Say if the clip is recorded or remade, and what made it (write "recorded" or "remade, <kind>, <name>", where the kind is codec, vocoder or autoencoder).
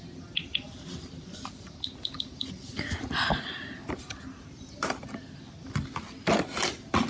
recorded